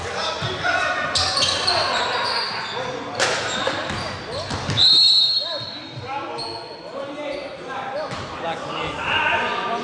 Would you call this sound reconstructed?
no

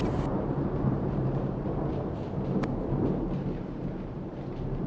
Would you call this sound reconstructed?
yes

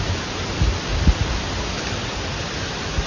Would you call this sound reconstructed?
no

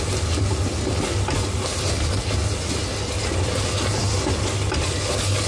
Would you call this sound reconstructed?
no